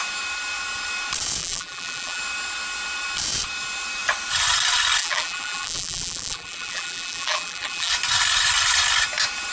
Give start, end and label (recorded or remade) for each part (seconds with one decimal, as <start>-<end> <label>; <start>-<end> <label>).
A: 0.0-1.4 recorded; 1.4-2.2 remade; 2.2-5.0 recorded; 5.0-7.9 remade; 7.9-9.5 recorded